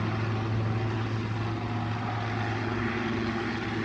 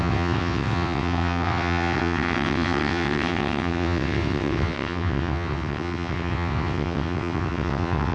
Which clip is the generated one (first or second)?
second